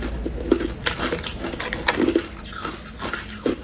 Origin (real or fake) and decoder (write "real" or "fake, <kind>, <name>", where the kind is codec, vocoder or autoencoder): real